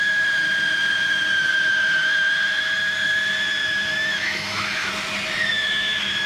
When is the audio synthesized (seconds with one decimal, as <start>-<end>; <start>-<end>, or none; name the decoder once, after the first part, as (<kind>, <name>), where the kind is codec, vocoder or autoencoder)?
3.6-4.9 (autoencoder, DAC-VAE); 5.5-6.3